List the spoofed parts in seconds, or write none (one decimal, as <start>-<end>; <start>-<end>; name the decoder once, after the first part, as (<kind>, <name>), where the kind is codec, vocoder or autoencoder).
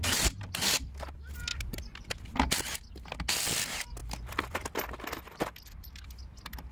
none